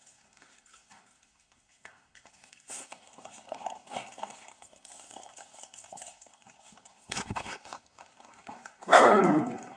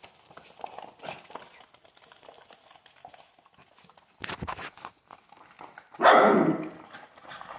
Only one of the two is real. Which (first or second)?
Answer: second